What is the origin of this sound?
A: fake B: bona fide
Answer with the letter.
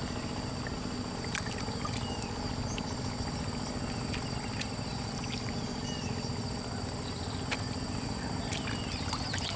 B